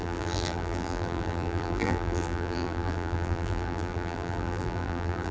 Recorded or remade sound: remade